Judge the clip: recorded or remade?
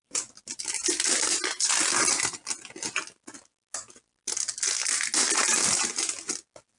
recorded